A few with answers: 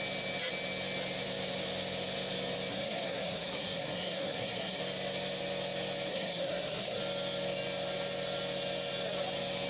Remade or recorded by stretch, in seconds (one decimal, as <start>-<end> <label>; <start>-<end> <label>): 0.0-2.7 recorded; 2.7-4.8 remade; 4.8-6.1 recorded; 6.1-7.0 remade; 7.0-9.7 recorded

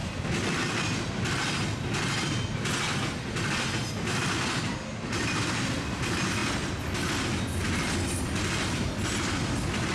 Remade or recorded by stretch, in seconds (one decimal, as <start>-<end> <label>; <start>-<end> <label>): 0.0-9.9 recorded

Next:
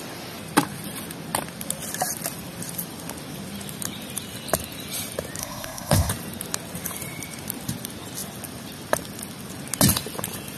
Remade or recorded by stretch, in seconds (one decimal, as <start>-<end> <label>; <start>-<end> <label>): 0.0-5.4 recorded; 5.4-6.1 remade; 6.1-10.6 recorded

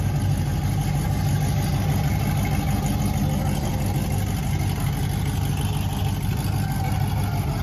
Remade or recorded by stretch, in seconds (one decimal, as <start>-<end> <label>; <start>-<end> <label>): 0.0-7.6 recorded

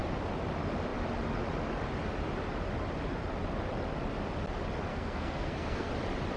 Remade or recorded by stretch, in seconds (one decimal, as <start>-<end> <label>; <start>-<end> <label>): 0.0-4.9 recorded; 4.9-5.9 remade; 5.9-6.4 recorded